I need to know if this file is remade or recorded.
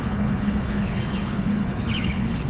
remade